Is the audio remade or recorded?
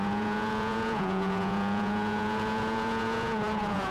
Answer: remade